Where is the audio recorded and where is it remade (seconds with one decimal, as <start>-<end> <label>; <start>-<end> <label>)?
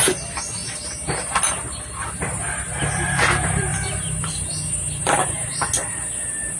0.0-6.6 recorded